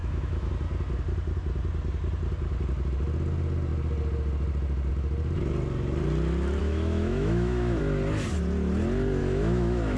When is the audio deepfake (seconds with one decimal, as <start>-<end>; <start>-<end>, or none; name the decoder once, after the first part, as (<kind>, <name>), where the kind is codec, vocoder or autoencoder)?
0.0-0.5 (autoencoder, DAC-VAE); 6.6-7.8; 9.2-10.0